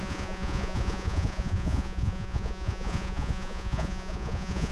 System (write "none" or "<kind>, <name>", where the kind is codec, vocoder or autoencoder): vocoder, Vocos